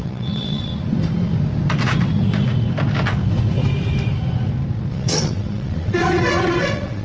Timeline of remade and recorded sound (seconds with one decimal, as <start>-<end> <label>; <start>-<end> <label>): 0.0-0.7 remade; 0.7-4.9 recorded; 4.9-7.0 remade